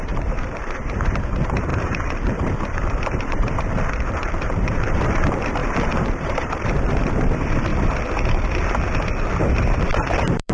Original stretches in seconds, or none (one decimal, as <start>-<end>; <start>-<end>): 7.7-9.5